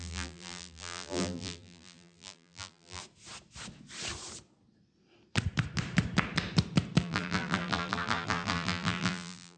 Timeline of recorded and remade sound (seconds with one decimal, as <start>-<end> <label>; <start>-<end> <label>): 0.0-3.0 remade; 3.0-7.0 recorded; 7.0-9.6 remade